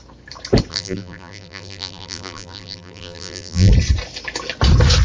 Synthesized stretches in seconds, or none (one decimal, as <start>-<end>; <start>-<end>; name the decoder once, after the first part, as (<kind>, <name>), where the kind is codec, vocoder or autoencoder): 0.7-3.7 (vocoder, BigVGAN v2)